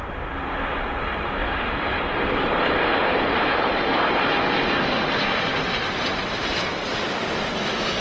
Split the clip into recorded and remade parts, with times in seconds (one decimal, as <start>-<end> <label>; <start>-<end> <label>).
0.0-1.4 recorded; 1.4-4.3 remade; 4.3-8.0 recorded